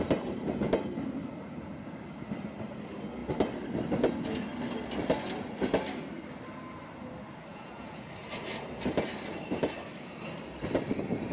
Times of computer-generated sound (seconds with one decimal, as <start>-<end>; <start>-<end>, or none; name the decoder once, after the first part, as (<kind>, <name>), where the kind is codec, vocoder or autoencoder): 7.5-8.1 (vocoder, Vocos)

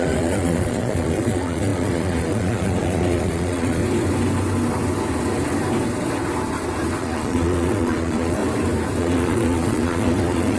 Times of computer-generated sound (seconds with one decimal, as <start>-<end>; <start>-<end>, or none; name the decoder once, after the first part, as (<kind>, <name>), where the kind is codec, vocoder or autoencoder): 0.0-3.8 (vocoder, Vocos); 7.0-8.4; 9.0-10.6

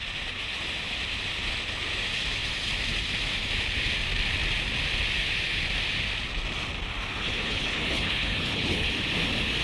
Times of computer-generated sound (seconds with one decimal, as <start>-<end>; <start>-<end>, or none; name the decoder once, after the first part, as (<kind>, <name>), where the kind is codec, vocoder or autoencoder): 7.2-8.9 (codec, HILCodec)

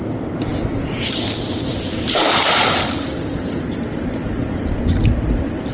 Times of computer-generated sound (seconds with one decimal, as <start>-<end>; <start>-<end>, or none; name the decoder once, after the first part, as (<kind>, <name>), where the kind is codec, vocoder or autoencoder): none

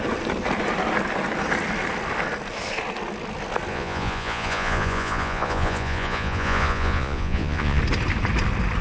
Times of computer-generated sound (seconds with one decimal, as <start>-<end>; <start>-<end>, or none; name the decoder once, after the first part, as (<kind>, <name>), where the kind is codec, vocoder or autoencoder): 3.7-7.8 (vocoder, Vocos)

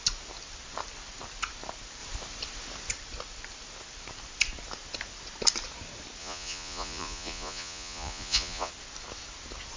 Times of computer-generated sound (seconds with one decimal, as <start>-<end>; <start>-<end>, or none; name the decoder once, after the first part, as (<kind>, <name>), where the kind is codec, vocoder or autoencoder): 6.2-8.7 (vocoder, Vocos)

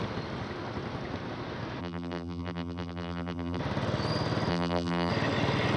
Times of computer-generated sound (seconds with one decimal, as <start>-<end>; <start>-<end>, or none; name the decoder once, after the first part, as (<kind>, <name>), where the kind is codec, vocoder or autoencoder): 1.8-3.6 (vocoder, BigVGAN v2); 4.5-5.1

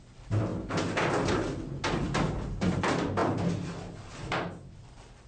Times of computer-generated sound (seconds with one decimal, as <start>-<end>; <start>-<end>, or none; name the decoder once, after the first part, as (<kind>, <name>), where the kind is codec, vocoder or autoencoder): none